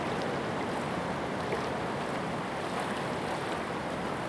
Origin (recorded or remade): recorded